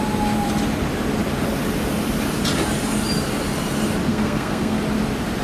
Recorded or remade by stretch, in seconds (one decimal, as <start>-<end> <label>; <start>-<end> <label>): 0.0-4.1 recorded; 4.1-4.8 remade; 4.8-5.4 recorded